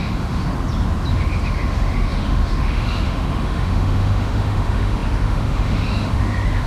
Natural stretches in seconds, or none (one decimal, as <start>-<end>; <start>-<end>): 0.5-1.1